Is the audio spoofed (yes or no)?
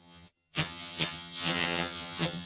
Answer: yes